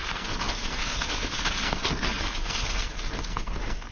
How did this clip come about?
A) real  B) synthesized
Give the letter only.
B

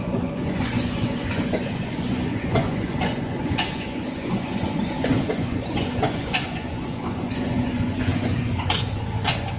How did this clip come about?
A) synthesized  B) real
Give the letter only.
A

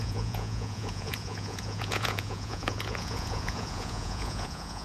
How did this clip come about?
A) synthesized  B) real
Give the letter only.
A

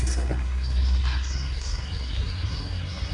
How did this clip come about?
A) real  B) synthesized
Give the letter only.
B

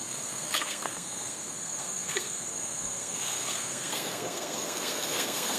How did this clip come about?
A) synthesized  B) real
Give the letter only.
A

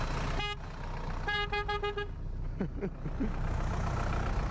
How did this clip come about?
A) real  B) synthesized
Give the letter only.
A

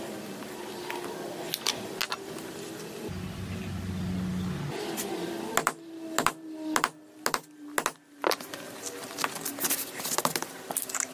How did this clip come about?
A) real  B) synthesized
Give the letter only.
A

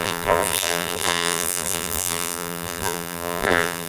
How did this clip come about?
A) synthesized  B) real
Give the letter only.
A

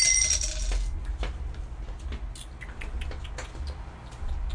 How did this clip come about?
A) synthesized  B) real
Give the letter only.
B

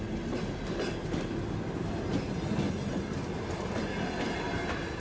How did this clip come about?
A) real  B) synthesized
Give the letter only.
A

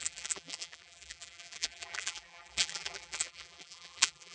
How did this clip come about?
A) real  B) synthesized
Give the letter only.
B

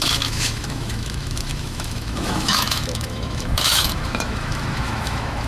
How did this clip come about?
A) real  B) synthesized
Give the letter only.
B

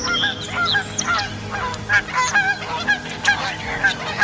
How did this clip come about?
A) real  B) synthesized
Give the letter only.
A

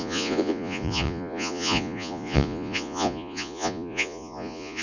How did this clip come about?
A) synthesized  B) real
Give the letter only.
A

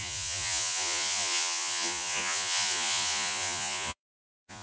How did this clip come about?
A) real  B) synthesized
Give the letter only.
B